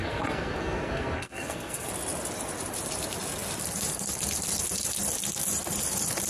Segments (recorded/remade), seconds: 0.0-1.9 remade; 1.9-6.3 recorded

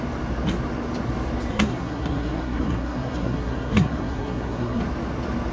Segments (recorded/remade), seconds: 0.0-1.5 recorded; 1.5-4.8 remade; 4.8-5.5 recorded

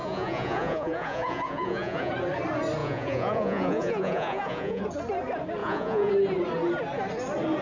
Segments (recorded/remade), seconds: 0.0-2.1 remade; 2.1-2.8 recorded; 2.8-4.8 remade; 4.8-5.6 recorded; 5.6-6.1 remade; 6.1-7.6 recorded

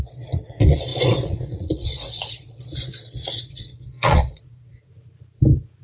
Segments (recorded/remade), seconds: 0.0-4.9 remade; 4.9-5.8 recorded

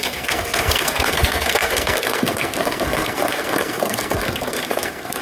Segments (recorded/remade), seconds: 0.0-5.2 remade

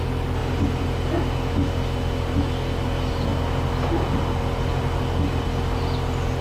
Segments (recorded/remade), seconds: 0.0-6.4 recorded

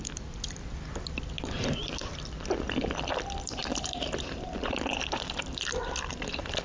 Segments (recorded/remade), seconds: 0.0-6.6 remade